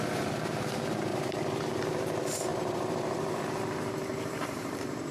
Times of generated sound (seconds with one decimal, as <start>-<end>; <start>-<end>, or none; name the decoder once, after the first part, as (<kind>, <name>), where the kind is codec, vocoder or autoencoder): 1.1-1.6 (vocoder, BigVGAN v2); 2.5-3.4; 4.1-5.1